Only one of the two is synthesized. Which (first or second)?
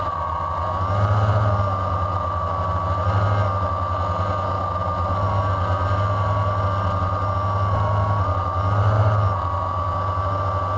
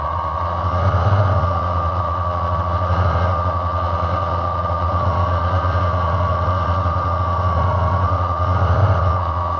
second